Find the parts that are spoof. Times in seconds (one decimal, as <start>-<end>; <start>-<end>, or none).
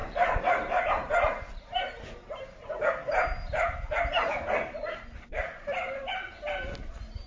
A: 0.0-1.1; 5.4-6.0